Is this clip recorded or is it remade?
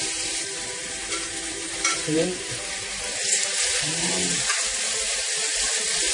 remade